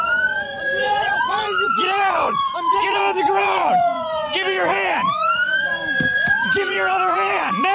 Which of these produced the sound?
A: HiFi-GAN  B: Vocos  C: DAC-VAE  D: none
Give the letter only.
B